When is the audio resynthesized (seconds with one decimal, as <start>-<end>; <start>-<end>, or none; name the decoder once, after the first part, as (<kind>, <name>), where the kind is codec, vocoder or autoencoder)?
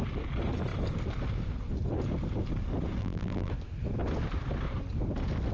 3.0-3.5 (vocoder, BigVGAN v2)